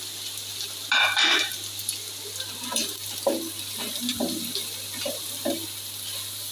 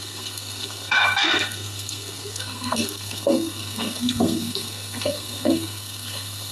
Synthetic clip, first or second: second